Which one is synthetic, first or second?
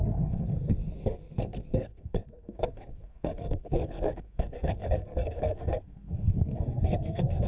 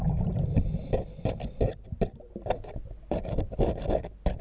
first